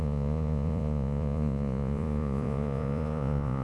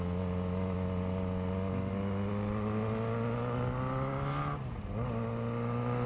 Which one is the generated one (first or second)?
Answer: first